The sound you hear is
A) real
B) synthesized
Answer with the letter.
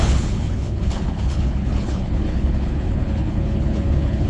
B